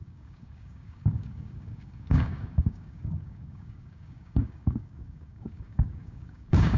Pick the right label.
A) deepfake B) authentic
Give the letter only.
A